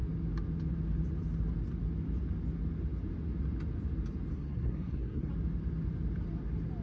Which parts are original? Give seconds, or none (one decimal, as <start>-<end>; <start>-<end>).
0.0-4.3; 5.3-6.8